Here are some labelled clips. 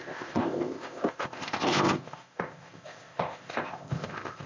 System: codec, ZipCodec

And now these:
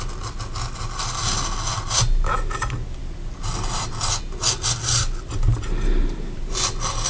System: none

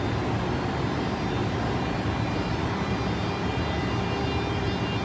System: none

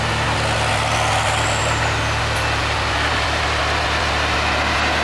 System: none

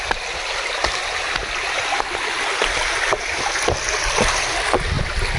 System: none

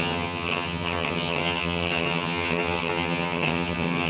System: vocoder, HiFi-GAN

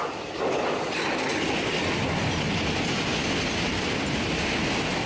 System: none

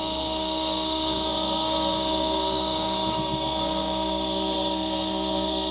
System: codec, SNAC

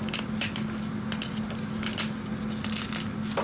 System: none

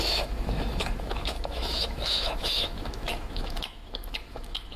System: autoencoder, DAC-VAE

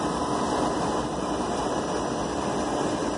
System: none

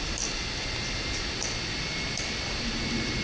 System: vocoder, BigVGAN v2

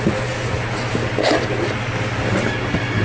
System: none